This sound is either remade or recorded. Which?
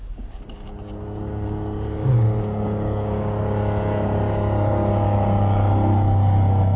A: remade